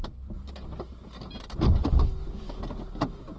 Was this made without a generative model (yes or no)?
yes